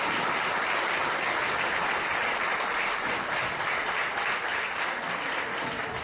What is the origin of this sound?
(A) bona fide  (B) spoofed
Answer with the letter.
A